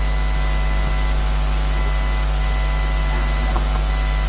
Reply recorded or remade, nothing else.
recorded